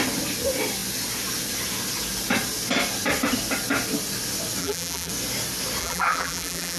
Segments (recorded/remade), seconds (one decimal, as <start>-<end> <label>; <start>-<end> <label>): 0.0-4.6 recorded; 4.6-5.1 remade; 5.1-5.8 recorded; 5.8-6.8 remade